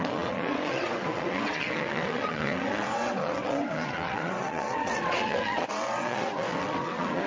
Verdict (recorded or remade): remade